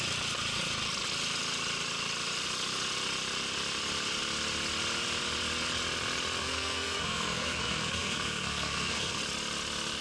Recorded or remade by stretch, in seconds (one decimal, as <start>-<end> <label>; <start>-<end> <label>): 0.0-6.4 recorded; 6.4-9.2 remade; 9.2-10.0 recorded